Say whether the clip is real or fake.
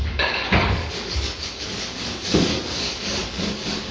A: fake